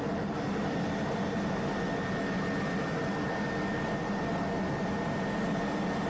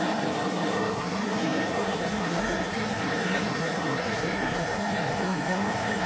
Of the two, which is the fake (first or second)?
second